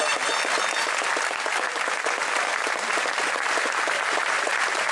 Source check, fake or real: real